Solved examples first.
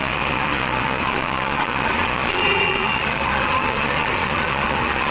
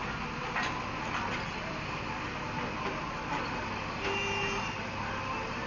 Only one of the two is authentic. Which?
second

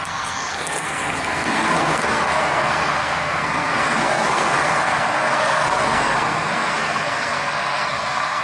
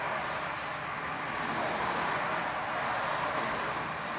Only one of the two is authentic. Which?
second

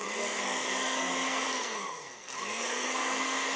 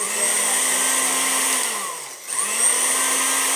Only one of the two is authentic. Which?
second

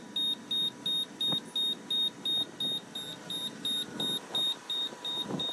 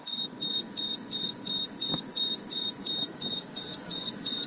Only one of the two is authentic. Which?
first